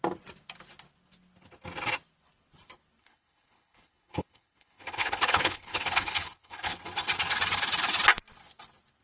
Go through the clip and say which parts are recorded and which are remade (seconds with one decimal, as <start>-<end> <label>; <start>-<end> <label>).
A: 0.0-3.0 recorded; 3.0-6.8 remade; 6.8-9.0 recorded